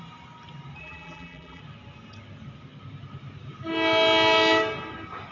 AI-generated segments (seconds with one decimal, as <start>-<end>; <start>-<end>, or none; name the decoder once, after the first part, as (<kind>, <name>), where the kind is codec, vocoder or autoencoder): 0.8-1.6 (vocoder, BigVGAN v2)